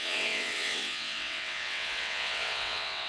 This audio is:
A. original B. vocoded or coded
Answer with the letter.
B